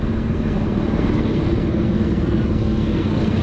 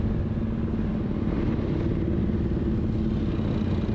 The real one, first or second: second